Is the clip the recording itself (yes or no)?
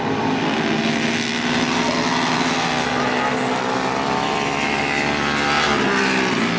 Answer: yes